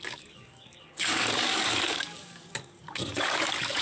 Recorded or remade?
remade